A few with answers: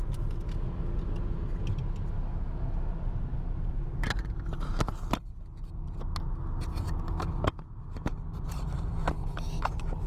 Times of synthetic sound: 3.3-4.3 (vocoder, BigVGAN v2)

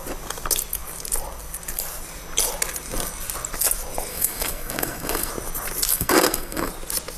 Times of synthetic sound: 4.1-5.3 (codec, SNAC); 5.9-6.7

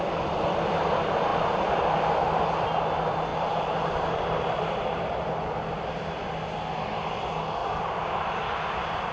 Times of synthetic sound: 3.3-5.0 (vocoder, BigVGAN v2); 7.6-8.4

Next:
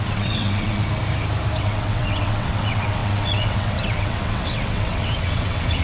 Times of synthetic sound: 0.0-0.8 (vocoder, WaveNeXt); 1.6-5.8

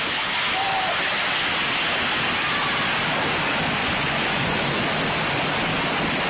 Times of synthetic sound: 3.8-4.8 (vocoder, Vocos)

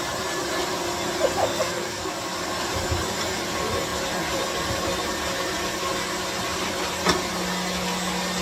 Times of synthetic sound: 1.4-2.1 (codec, SNAC)